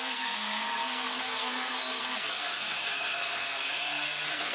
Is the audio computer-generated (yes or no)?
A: yes